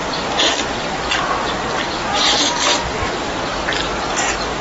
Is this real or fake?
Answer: real